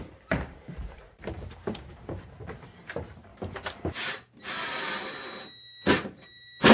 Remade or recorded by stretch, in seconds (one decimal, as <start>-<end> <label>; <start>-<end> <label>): 0.0-3.3 remade; 3.3-5.9 recorded; 5.9-6.7 remade